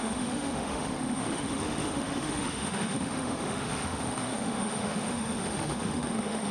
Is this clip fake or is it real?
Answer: fake